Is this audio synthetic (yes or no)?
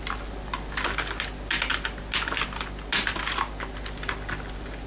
no